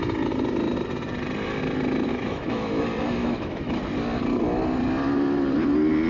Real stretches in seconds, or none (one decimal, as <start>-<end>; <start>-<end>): 0.0-2.1; 2.8-3.2; 3.8-6.1